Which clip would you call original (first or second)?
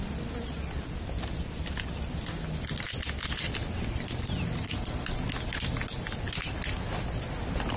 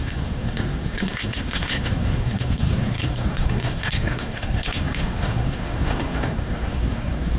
first